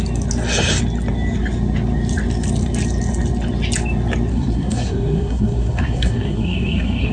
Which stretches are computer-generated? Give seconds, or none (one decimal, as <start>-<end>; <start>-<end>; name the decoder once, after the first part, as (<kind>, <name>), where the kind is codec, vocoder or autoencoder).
4.3-7.1 (codec, SNAC)